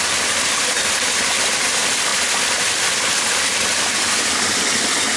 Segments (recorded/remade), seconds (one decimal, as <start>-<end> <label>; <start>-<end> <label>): 0.0-5.2 recorded